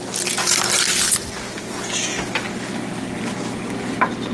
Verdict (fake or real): real